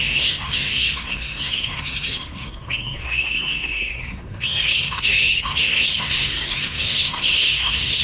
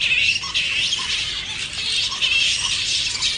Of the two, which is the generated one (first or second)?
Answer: first